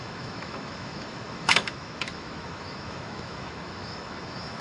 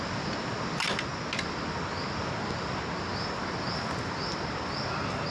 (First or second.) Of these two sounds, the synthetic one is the first